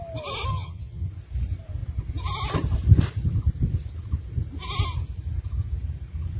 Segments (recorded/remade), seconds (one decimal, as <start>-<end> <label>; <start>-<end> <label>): 0.0-0.5 recorded; 0.5-1.1 remade; 1.1-6.4 recorded